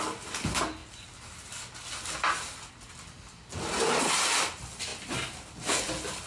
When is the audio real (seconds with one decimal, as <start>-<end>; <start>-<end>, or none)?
0.0-6.3